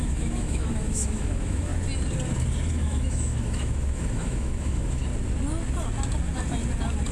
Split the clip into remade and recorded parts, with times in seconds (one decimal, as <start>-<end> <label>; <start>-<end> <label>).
0.0-1.7 remade; 1.7-2.7 recorded; 2.7-5.0 remade; 5.0-7.1 recorded